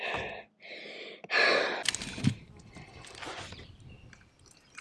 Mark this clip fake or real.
real